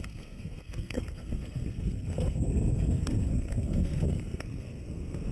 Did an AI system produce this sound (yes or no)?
yes